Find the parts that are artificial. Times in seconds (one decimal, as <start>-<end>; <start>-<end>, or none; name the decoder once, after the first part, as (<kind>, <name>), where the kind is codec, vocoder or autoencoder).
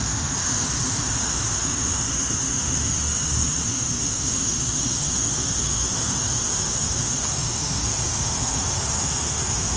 0.0-9.8 (autoencoder, DAC-VAE)